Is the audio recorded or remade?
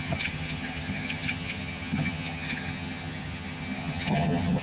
remade